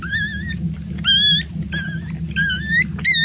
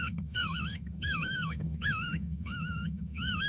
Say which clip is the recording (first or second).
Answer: first